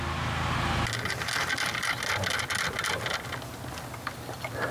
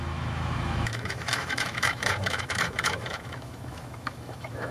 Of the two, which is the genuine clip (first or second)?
first